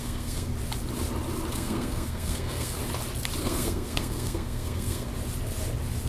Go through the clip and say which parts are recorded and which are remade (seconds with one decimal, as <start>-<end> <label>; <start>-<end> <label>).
0.0-0.5 remade; 0.5-1.5 recorded; 1.5-2.8 remade; 2.8-3.4 recorded; 3.4-5.1 remade; 5.1-6.1 recorded